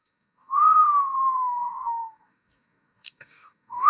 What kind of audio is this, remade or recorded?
remade